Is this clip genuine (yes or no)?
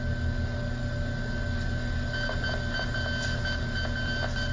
yes